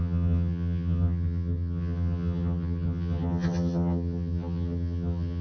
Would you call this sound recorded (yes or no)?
no